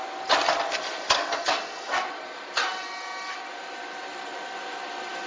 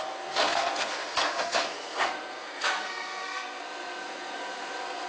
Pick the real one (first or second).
first